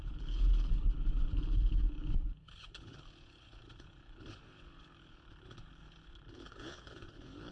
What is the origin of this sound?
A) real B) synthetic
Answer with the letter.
B